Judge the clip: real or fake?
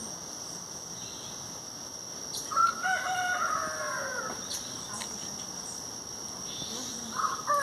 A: real